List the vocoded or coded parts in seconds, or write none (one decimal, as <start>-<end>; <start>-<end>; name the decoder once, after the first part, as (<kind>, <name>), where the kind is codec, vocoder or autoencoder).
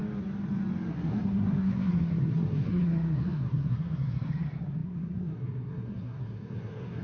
0.9-7.0 (codec, SNAC)